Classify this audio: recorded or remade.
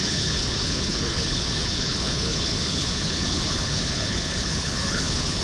remade